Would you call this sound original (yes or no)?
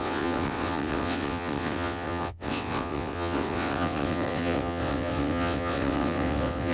no